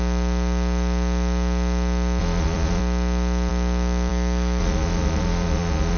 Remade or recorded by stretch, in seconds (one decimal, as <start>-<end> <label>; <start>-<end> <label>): 0.0-2.2 recorded; 2.2-2.8 remade; 2.8-4.6 recorded; 4.6-6.0 remade